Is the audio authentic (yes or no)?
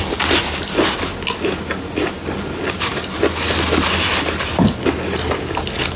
yes